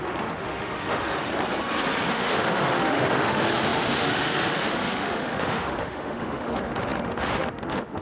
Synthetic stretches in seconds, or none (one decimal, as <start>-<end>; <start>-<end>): 0.0-1.3; 2.1-8.0